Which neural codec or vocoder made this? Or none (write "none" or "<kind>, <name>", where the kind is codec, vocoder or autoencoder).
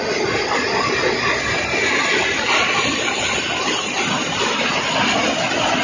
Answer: none